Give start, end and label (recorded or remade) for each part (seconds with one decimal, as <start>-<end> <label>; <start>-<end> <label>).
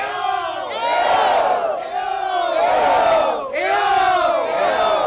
0.0-5.1 recorded